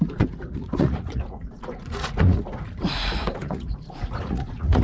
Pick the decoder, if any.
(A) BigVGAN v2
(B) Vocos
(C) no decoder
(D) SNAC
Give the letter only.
B